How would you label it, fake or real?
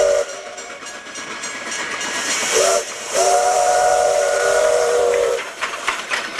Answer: fake